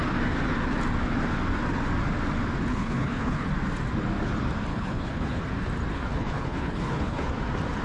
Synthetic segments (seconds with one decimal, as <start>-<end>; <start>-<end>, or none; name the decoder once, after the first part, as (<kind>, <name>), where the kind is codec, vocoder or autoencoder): 2.7-3.5 (codec, HILCodec); 4.7-5.4; 5.9-7.3